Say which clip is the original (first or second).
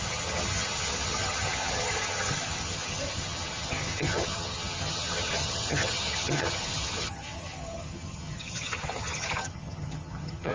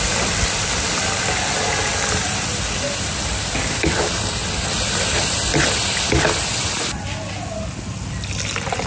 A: second